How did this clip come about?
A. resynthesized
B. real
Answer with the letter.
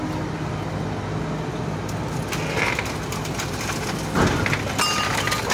B